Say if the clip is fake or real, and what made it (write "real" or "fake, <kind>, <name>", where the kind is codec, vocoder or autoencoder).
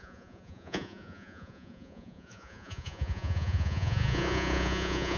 fake, vocoder, Vocos